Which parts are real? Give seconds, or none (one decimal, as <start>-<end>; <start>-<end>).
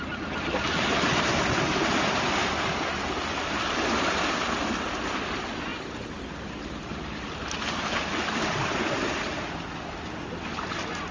0.0-2.4; 4.2-8.1; 8.7-11.1